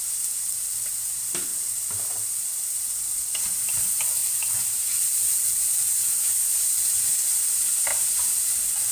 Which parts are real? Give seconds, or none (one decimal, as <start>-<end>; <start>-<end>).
0.0-1.5; 3.1-4.2; 5.6-8.9